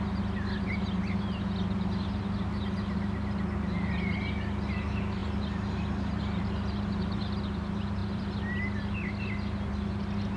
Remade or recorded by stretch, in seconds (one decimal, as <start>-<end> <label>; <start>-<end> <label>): 0.0-8.0 recorded; 8.0-10.4 remade